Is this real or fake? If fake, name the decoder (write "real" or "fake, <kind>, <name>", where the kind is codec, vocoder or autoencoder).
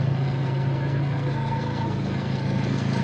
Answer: fake, codec, SNAC